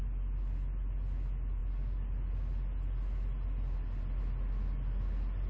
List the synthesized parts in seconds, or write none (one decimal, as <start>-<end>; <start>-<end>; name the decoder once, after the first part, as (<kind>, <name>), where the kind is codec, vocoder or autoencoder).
none